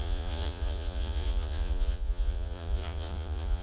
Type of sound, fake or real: fake